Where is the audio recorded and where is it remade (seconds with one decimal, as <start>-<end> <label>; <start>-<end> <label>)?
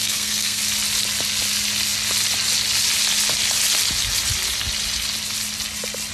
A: 0.0-0.6 remade; 0.6-6.1 recorded